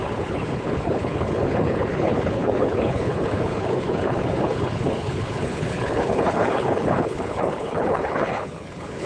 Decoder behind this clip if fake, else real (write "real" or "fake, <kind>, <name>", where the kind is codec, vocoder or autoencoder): fake, codec, HILCodec